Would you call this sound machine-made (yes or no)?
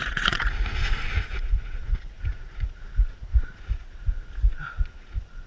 yes